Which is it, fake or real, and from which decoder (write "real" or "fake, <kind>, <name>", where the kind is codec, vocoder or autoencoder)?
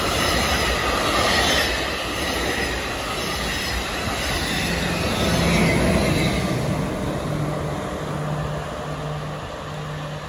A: real